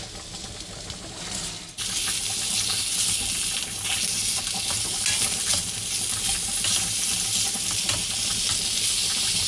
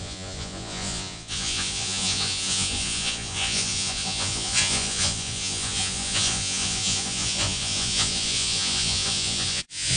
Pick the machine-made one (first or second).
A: second